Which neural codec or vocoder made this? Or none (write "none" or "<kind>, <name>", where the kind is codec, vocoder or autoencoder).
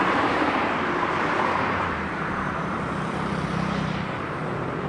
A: vocoder, BigVGAN v2